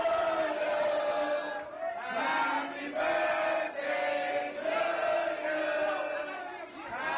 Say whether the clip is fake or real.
real